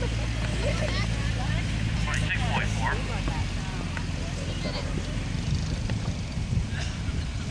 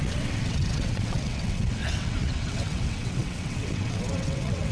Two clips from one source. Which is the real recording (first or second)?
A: first